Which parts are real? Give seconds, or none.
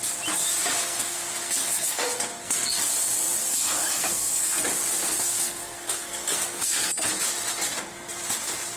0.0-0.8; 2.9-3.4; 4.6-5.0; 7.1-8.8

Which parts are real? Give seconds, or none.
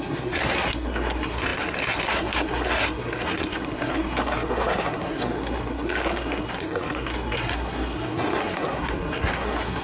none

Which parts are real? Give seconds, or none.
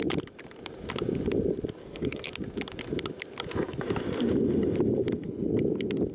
0.0-1.8; 2.3-6.1